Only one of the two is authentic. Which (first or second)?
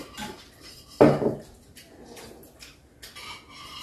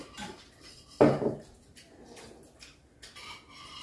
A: first